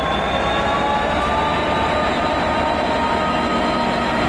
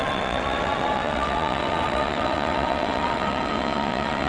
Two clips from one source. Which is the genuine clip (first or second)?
first